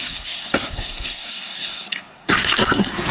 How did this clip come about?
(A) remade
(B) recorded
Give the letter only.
A